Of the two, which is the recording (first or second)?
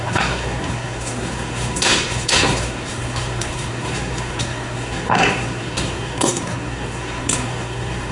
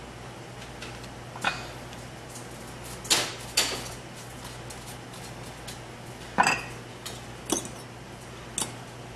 second